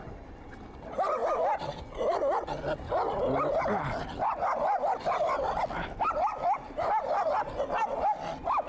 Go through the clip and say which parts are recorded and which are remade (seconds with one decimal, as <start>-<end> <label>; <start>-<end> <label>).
0.0-8.7 recorded

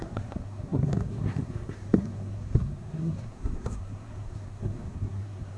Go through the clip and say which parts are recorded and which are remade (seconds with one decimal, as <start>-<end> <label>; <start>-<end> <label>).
0.0-5.6 remade

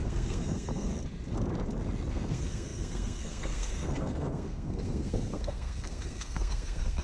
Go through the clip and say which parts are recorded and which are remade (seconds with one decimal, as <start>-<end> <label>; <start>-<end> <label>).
0.0-0.9 remade; 0.9-2.1 recorded; 2.1-7.0 remade